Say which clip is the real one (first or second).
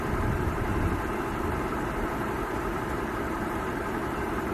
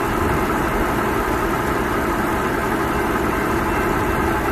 second